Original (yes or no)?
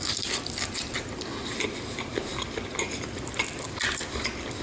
yes